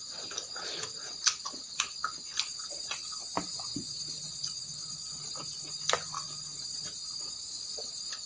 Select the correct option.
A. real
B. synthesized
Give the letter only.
A